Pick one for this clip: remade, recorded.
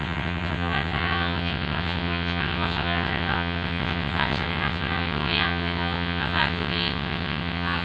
remade